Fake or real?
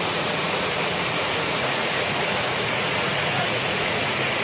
fake